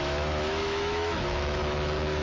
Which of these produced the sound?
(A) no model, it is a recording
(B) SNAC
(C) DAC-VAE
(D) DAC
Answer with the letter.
C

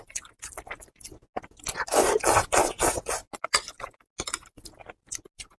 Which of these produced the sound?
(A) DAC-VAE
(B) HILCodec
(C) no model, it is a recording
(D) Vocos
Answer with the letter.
C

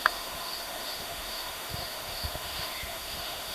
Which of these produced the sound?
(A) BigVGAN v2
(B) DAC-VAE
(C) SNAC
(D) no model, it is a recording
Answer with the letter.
B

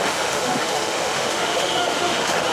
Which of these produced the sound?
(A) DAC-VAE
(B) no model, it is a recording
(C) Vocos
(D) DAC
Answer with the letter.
A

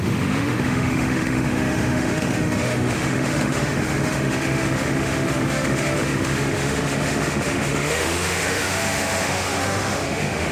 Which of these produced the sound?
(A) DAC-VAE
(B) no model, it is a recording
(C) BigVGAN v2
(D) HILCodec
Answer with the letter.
A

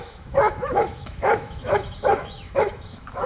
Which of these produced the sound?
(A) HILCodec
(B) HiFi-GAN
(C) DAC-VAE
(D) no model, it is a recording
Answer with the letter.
C